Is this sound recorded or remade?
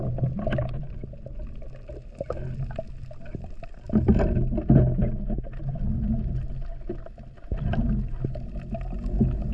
recorded